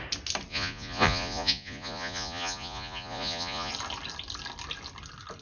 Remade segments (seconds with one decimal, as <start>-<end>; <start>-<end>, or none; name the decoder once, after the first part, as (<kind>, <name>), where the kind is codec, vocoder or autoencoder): 0.5-3.7 (vocoder, Vocos)